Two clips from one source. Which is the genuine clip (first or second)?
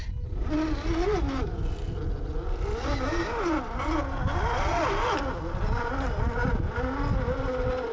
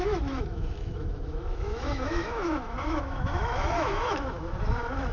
first